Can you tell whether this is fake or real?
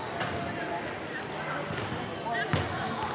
real